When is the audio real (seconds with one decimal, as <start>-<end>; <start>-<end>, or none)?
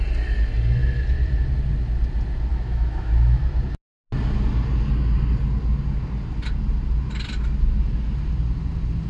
0.0-2.5; 3.4-9.1